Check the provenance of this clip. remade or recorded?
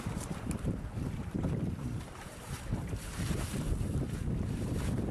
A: remade